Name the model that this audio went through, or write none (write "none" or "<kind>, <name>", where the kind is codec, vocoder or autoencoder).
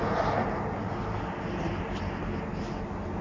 none